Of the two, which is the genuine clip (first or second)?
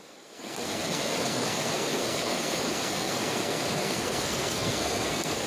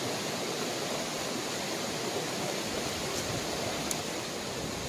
second